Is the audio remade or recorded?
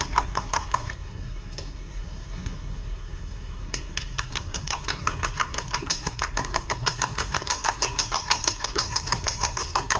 remade